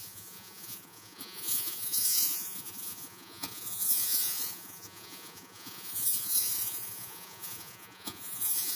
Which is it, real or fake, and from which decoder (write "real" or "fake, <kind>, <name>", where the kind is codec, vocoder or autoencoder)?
fake, vocoder, Vocos